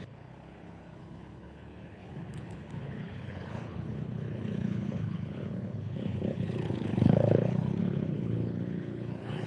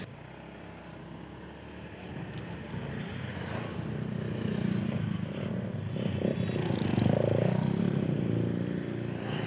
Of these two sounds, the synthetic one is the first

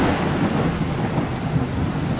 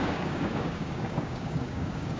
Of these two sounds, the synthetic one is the second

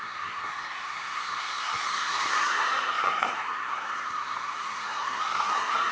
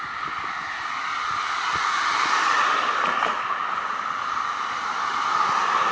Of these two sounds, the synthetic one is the first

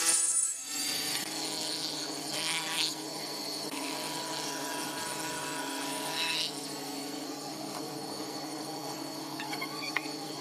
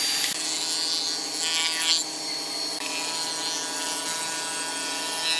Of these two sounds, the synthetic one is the first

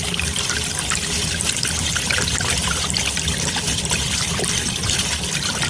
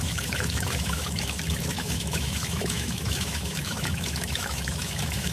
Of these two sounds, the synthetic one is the second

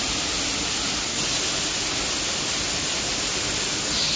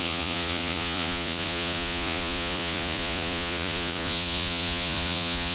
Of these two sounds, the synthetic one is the second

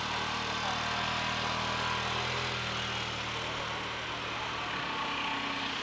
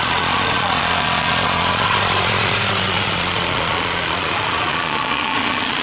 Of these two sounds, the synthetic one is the second